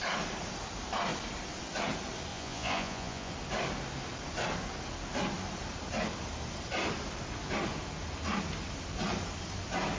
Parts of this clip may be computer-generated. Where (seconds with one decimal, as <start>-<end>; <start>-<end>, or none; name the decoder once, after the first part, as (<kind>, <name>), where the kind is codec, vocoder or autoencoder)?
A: 2.3-3.3 (vocoder, Vocos)